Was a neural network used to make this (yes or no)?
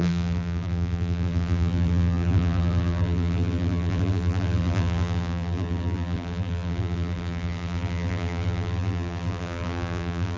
yes